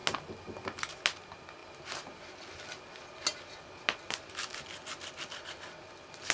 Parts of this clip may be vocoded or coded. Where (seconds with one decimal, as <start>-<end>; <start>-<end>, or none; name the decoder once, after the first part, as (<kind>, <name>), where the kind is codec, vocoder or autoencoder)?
none